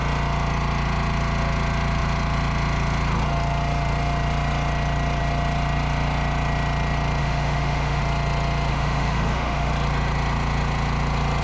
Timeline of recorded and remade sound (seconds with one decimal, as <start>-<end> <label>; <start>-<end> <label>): 0.0-7.2 recorded; 7.2-8.0 remade; 8.0-8.7 recorded; 8.7-9.7 remade; 9.7-11.4 recorded

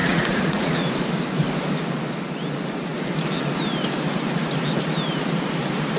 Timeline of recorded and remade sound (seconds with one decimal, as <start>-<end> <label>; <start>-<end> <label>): 0.0-0.9 remade; 0.9-6.0 recorded

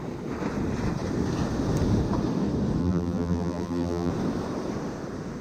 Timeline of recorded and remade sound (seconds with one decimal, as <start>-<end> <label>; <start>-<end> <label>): 0.0-2.8 recorded; 2.8-4.1 remade; 4.1-5.4 recorded

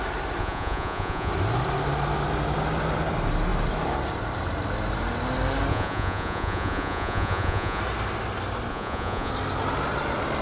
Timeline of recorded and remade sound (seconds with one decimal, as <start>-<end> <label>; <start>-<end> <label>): 0.0-0.4 recorded; 0.4-1.3 remade; 1.3-5.7 recorded; 5.7-7.8 remade; 7.8-8.7 recorded; 8.7-9.3 remade; 9.3-10.4 recorded